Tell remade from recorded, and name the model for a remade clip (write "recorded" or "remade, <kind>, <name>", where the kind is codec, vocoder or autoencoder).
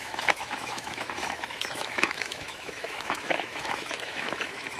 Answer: remade, autoencoder, DAC-VAE